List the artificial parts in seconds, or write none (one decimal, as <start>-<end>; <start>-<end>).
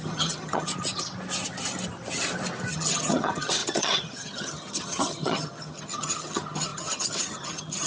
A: 0.0-0.7; 2.7-7.9